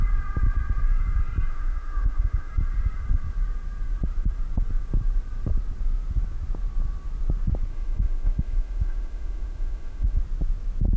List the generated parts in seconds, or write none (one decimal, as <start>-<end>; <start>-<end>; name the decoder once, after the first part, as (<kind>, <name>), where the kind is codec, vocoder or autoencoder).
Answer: 1.5-2.5 (autoencoder, DAC-VAE); 7.7-10.2